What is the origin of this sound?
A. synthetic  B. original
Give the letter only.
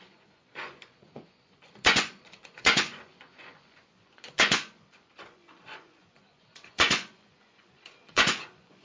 A